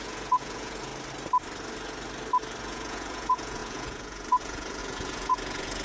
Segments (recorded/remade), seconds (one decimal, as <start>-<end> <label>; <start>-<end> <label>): 0.0-0.9 remade; 0.9-2.6 recorded; 2.6-5.8 remade